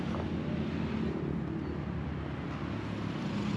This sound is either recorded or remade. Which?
recorded